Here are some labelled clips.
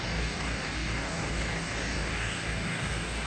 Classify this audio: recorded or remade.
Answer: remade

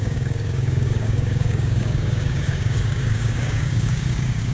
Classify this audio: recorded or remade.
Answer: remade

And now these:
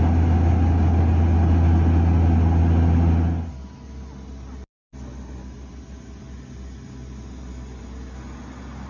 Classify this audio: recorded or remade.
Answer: recorded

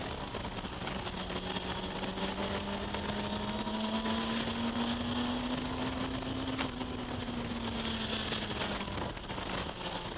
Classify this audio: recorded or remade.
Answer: recorded